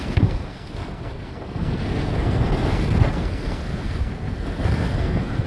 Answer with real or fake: fake